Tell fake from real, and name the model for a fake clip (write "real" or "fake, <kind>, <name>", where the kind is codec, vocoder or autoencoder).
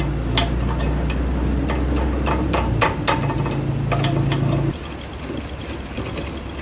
real